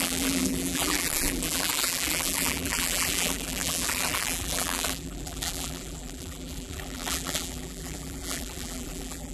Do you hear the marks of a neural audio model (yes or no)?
yes